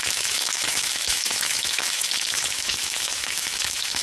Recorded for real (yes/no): no